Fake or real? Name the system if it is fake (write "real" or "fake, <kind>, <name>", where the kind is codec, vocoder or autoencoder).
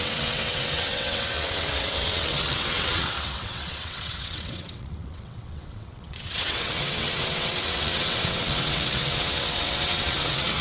fake, vocoder, WaveNeXt